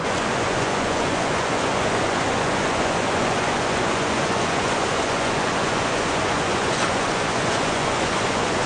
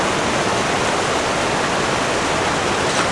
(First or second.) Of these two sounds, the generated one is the first